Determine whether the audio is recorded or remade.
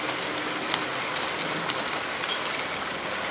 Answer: recorded